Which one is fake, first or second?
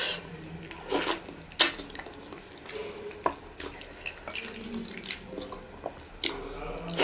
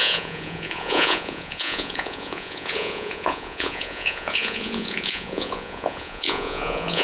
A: second